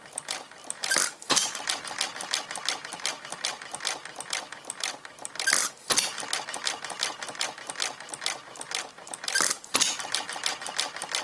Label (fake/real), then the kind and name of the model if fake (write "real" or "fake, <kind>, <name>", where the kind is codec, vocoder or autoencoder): real